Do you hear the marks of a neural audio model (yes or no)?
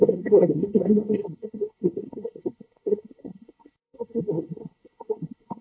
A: yes